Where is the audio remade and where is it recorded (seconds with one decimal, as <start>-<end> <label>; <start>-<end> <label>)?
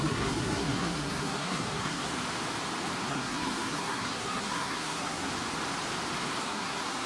0.0-2.1 remade; 2.1-3.1 recorded; 3.1-5.3 remade; 5.3-6.4 recorded; 6.4-7.1 remade